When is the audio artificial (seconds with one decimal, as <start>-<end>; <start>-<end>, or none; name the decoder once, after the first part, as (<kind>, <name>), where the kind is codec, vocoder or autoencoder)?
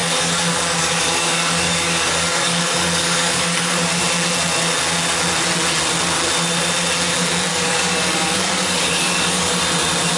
0.0-4.0 (codec, DAC); 7.5-9.6